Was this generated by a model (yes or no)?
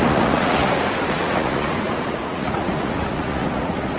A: yes